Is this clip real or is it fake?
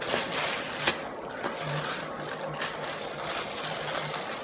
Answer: real